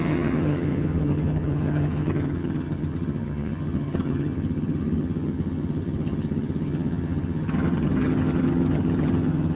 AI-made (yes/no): yes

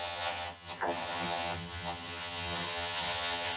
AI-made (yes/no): yes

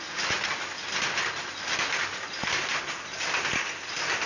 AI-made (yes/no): no